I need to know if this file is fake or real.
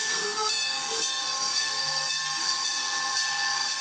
fake